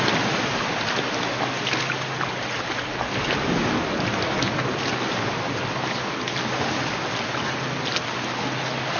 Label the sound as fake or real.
real